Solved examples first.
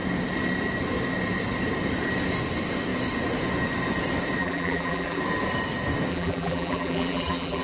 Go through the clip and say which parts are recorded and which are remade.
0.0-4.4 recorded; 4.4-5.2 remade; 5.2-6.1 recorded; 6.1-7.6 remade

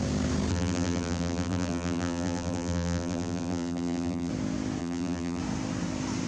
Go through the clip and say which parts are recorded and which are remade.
0.0-0.5 recorded; 0.5-4.3 remade; 4.3-4.8 recorded; 4.8-5.4 remade; 5.4-6.3 recorded

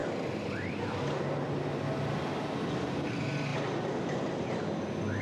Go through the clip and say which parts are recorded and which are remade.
0.0-5.2 recorded

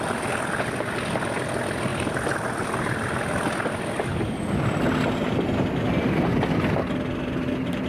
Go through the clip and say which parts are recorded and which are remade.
0.0-7.9 recorded

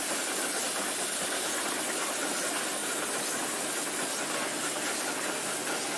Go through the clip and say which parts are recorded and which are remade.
0.0-2.8 recorded; 2.8-3.3 remade; 3.3-6.0 recorded

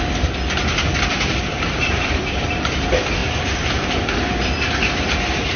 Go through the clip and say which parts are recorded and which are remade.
0.0-1.5 recorded; 1.5-2.6 remade; 2.6-3.2 recorded; 3.2-3.9 remade; 3.9-5.6 recorded

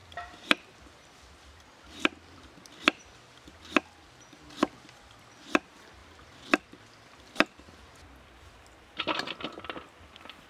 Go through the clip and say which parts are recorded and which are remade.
0.0-10.5 remade